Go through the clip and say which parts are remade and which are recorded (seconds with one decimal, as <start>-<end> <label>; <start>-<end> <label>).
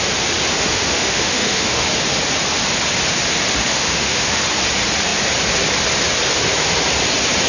0.0-0.5 recorded; 0.5-1.9 remade; 1.9-3.6 recorded; 3.6-4.4 remade; 4.4-7.5 recorded